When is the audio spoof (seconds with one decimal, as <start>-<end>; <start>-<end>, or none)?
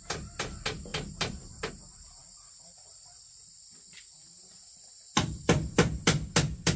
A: 0.9-1.7; 2.2-6.3